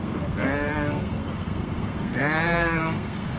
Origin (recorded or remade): remade